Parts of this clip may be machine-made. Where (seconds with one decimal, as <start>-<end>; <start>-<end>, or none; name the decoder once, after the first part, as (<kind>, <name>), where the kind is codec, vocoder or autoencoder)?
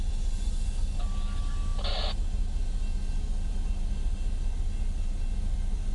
none